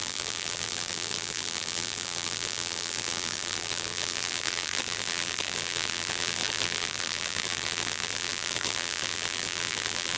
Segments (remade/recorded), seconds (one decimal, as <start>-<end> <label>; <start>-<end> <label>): 0.0-10.2 remade